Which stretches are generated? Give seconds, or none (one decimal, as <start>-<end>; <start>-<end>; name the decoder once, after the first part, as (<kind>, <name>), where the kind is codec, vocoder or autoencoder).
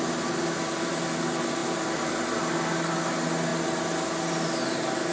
1.6-2.4 (vocoder, BigVGAN v2)